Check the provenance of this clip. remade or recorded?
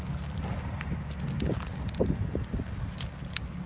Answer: recorded